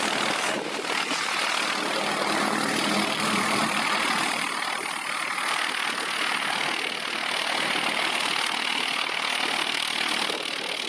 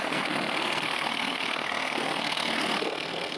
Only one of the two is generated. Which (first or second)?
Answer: second